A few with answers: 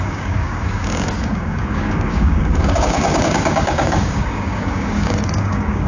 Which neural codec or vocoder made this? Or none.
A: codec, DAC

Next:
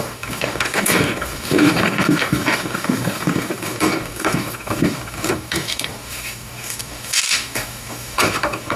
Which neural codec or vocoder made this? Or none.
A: codec, DAC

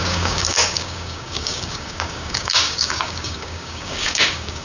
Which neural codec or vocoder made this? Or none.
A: codec, DAC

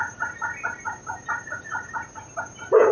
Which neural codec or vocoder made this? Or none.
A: none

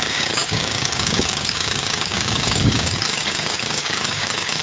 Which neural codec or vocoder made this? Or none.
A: codec, DAC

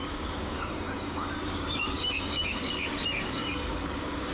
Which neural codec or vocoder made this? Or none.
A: codec, DAC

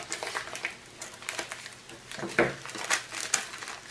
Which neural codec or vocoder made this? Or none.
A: none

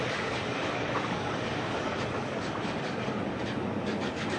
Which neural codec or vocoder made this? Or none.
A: codec, DAC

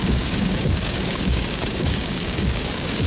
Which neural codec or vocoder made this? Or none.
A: codec, DAC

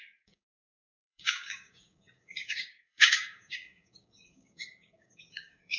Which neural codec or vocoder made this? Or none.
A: codec, DAC